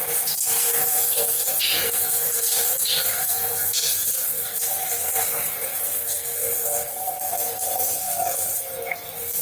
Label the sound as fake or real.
fake